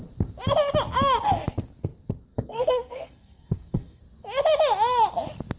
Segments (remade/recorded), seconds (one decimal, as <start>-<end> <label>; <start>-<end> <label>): 0.0-2.3 recorded; 2.3-4.0 remade; 4.0-5.6 recorded